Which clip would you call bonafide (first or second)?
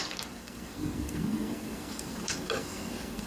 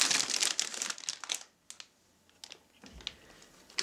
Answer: second